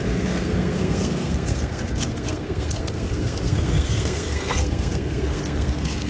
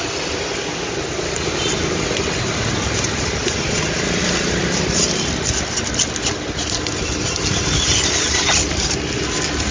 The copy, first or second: first